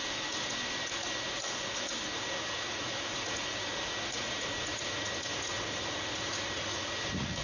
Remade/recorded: remade